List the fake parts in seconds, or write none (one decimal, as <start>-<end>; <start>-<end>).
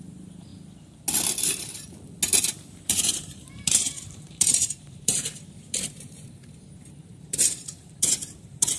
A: 0.0-0.5; 2.4-8.8